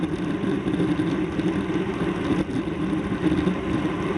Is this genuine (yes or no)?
yes